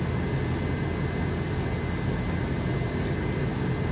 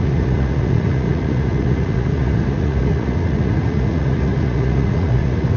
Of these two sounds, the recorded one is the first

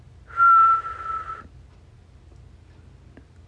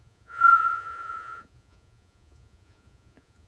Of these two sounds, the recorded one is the first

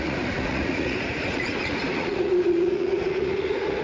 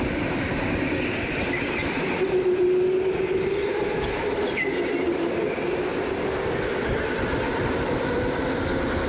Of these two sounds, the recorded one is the second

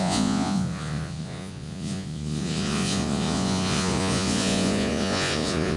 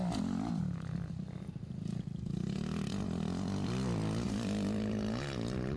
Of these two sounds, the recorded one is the second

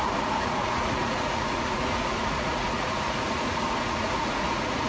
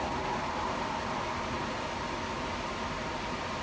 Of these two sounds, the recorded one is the second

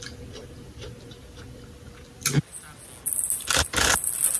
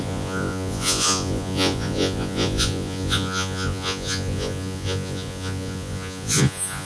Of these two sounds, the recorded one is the first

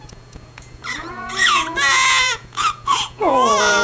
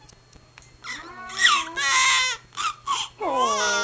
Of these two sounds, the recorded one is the second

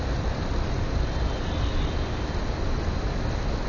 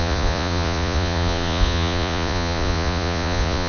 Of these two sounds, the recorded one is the first